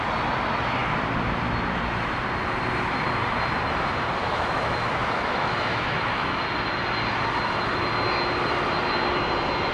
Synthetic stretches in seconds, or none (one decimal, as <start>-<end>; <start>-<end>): 4.2-6.4